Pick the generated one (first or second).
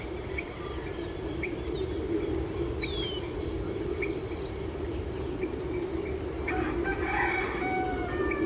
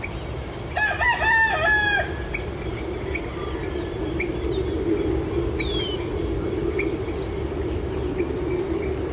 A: first